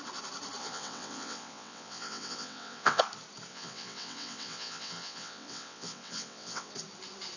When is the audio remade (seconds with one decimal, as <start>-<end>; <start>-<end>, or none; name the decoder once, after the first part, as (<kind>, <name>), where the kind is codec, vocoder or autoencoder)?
0.6-3.0 (vocoder, WaveNeXt); 3.5-6.7